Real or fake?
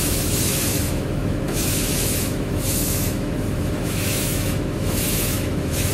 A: fake